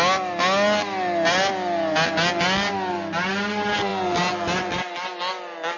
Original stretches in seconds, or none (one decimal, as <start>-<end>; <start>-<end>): 0.0-5.8